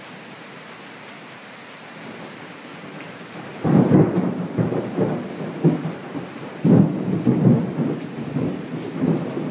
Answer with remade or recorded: recorded